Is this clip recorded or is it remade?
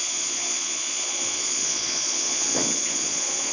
remade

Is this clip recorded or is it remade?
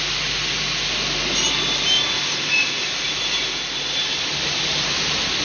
recorded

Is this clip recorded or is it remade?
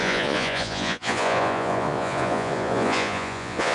remade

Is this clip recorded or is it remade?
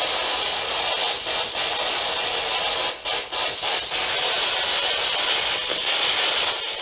recorded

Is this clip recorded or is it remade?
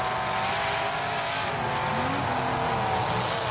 recorded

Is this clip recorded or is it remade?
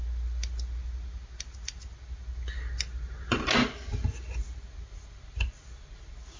recorded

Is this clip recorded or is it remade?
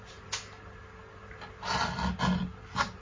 recorded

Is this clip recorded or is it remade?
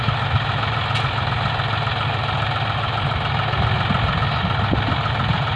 recorded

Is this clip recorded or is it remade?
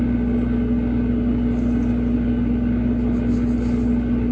recorded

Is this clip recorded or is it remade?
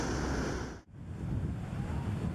recorded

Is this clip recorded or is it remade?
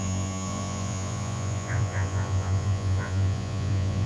remade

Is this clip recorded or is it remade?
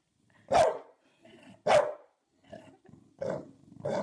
recorded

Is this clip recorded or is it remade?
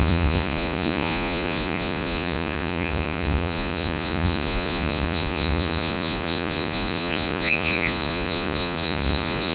remade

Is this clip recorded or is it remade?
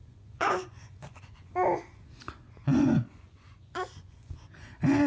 remade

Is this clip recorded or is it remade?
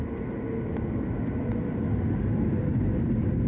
recorded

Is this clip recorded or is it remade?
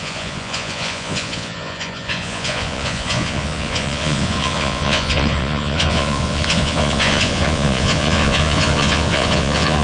remade